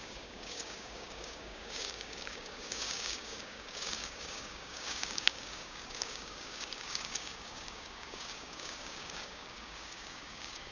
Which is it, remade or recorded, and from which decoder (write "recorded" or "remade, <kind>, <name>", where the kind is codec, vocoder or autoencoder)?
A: remade, codec, DAC